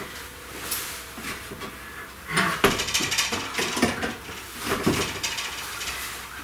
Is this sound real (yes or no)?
yes